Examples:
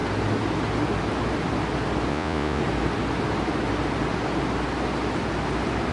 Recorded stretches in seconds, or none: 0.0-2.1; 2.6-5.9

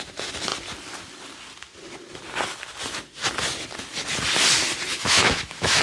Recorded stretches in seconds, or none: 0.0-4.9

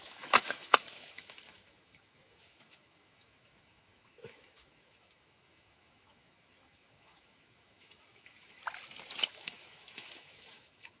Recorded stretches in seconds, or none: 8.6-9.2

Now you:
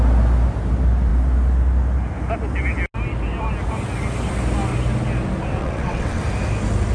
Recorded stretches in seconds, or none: 0.0-5.6; 6.2-6.9

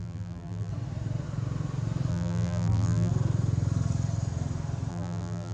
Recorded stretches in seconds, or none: 0.7-2.1; 3.1-4.9

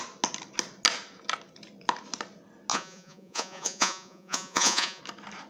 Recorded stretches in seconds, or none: 0.0-2.7; 5.0-5.5